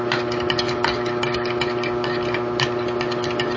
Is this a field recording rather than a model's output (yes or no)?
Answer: yes